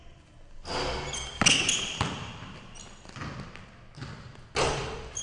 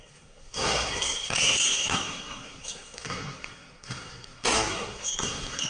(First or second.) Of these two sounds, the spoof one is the second